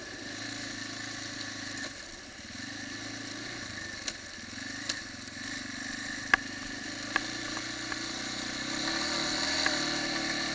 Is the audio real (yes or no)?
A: yes